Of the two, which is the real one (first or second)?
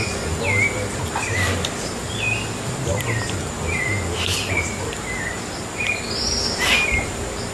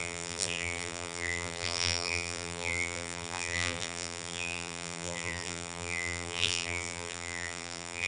first